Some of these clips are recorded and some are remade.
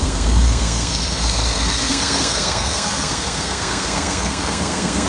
remade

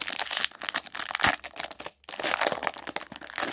recorded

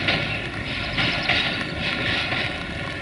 recorded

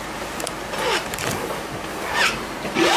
remade